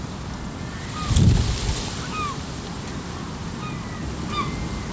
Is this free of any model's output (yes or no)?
yes